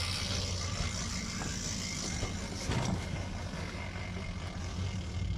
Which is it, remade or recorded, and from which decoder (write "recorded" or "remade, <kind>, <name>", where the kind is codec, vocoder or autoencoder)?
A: recorded